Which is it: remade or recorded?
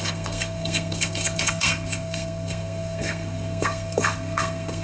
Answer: remade